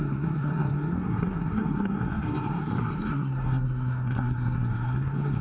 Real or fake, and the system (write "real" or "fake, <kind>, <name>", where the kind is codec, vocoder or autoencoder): fake, codec, SNAC